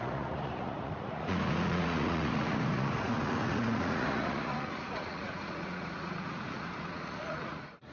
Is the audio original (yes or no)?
no